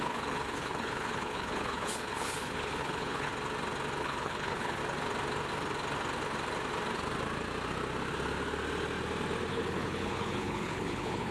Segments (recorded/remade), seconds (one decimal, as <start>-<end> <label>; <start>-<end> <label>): 0.0-3.3 remade; 3.3-4.0 recorded; 4.0-4.8 remade; 4.8-9.5 recorded; 9.5-11.3 remade